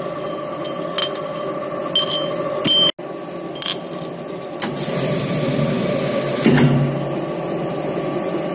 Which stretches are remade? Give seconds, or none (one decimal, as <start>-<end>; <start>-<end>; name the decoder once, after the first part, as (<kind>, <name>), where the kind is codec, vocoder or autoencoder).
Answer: none